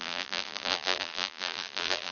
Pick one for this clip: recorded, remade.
remade